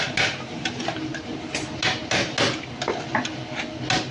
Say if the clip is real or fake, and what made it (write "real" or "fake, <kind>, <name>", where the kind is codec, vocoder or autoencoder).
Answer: real